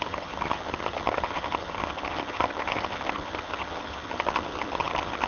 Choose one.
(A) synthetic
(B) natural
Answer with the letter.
A